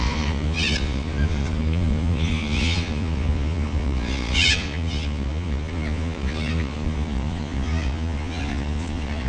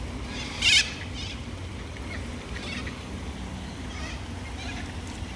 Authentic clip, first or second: second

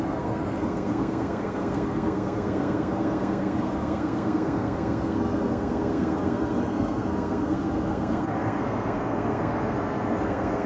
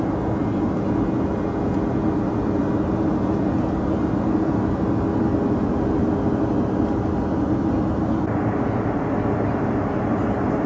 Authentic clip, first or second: second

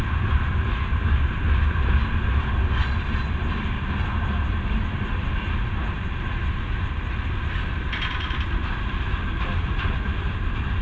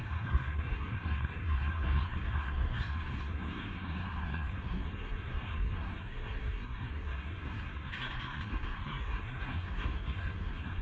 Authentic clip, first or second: first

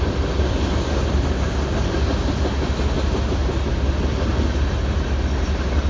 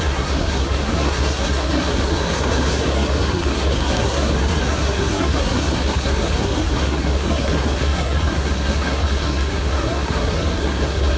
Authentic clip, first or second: first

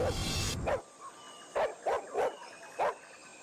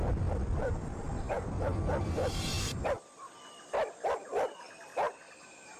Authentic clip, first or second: first